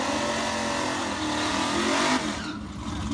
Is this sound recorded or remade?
recorded